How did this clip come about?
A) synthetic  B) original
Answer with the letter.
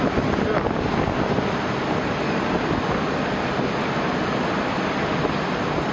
B